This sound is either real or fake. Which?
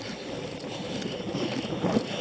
real